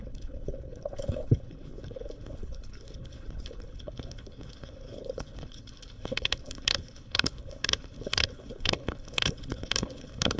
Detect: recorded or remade remade